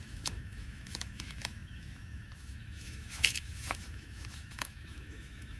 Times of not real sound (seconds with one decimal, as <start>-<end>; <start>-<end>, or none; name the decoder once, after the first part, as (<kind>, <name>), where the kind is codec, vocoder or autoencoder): 0.0-5.6 (autoencoder, DAC-VAE)